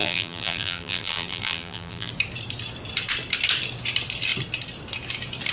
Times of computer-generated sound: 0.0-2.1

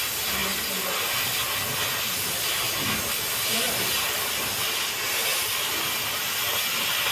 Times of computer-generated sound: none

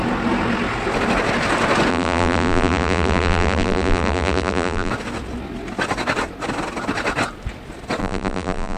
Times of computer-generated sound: 1.9-4.9; 8.0-8.8

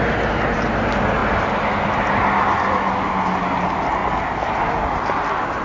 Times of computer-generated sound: none

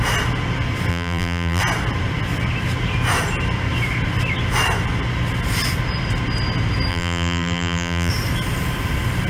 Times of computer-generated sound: 0.9-1.6; 6.9-8.1